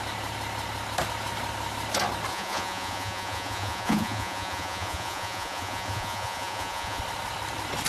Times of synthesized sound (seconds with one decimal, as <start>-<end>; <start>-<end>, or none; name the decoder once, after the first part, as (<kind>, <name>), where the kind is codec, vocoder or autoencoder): 2.3-7.0 (vocoder, Vocos)